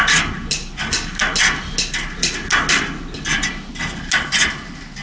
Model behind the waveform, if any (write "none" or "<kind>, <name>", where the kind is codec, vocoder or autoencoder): none